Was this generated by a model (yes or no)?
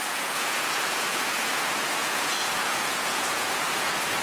yes